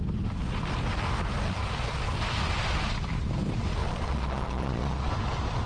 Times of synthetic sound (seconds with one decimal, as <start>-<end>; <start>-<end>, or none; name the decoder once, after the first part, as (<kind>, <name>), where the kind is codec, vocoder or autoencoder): 3.8-5.1 (vocoder, Vocos)